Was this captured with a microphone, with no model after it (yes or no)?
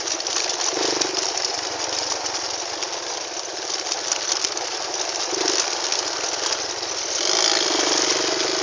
yes